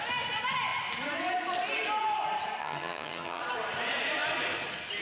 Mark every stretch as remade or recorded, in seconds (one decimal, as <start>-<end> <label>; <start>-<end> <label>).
0.0-2.6 recorded; 2.6-3.4 remade; 3.4-5.0 recorded